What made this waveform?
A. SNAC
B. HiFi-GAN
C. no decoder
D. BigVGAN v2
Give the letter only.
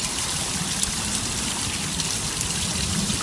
C